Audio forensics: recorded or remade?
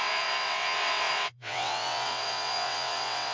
remade